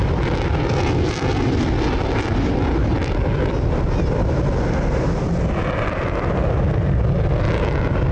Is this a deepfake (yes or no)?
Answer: no